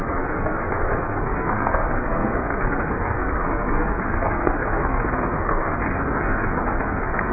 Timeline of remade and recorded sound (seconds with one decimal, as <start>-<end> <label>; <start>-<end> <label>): 0.0-7.3 remade

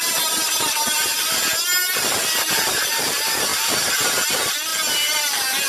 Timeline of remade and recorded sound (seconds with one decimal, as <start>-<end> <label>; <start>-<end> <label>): 0.0-5.7 recorded